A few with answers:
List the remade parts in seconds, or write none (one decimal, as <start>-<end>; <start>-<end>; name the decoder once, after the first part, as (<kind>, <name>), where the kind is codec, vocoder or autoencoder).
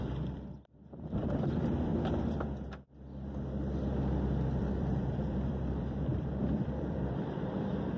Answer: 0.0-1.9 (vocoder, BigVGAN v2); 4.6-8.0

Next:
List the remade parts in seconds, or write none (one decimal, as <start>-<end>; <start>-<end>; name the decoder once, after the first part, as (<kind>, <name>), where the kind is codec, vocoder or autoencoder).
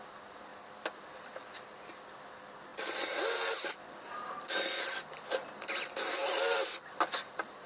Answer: 0.5-1.3 (vocoder, BigVGAN v2); 6.2-7.0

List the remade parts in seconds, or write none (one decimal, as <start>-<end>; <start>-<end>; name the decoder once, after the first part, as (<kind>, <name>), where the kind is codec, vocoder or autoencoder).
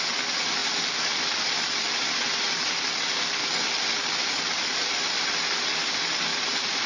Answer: 6.3-6.9 (vocoder, BigVGAN v2)